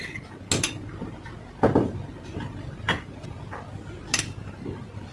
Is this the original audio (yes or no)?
yes